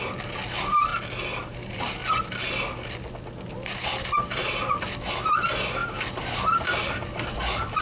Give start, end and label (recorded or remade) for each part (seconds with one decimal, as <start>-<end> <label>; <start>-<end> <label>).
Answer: 0.0-7.8 recorded